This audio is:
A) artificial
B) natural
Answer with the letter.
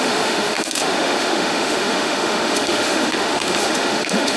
A